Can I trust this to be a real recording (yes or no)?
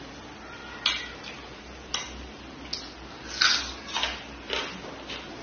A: yes